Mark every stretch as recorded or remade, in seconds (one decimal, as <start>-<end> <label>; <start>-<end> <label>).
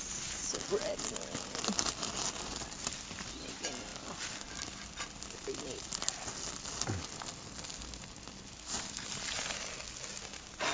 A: 0.0-10.7 recorded